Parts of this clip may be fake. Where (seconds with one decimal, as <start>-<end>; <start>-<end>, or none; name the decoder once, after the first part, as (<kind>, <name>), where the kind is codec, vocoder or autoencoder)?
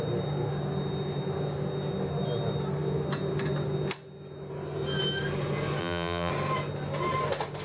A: 5.8-6.3 (vocoder, BigVGAN v2)